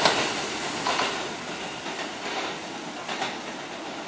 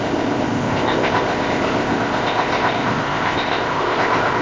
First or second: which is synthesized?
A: second